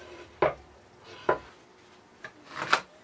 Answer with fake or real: real